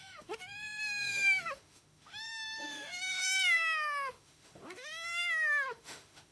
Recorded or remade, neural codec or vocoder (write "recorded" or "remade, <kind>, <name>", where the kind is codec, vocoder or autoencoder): remade, autoencoder, DAC-VAE